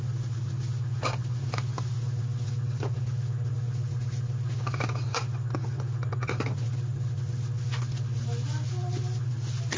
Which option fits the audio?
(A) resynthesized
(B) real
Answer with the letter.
B